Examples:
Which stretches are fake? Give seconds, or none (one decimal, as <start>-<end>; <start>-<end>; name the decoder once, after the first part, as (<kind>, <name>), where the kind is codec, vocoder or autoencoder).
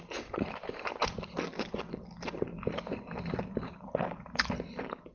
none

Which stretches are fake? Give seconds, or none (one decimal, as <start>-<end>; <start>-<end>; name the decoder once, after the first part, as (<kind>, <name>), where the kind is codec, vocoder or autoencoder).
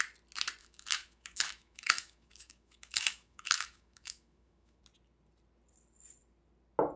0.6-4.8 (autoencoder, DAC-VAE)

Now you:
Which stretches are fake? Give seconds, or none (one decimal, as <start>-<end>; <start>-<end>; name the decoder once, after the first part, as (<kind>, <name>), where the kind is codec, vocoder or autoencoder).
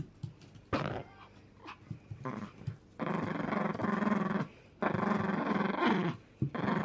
none